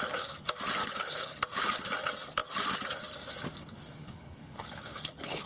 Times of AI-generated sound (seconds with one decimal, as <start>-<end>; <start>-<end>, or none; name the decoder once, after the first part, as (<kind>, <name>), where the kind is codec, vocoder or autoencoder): 0.8-1.4 (codec, HILCodec); 4.0-5.5